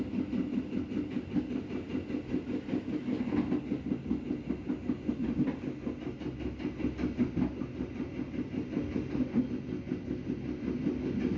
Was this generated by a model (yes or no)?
no